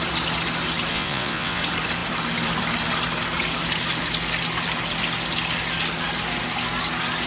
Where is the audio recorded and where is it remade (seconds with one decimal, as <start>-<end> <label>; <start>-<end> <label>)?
0.0-0.9 recorded; 0.9-1.6 remade; 1.6-7.3 recorded